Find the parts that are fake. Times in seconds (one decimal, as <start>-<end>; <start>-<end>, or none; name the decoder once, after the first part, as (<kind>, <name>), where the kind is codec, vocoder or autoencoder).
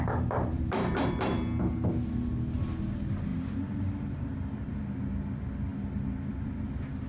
none